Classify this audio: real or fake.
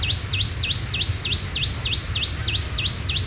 real